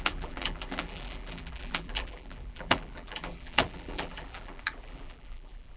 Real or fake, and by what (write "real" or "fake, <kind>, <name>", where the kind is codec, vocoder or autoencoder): fake, vocoder, BigVGAN v2